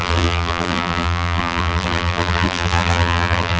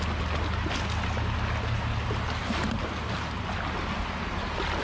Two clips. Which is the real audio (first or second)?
second